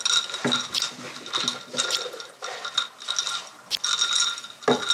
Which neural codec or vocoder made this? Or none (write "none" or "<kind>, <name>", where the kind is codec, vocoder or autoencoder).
none